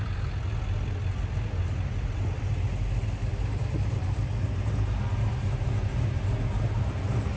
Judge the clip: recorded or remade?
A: recorded